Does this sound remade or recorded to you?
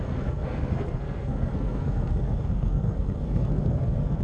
remade